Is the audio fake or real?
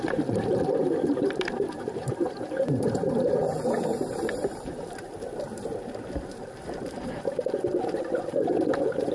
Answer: fake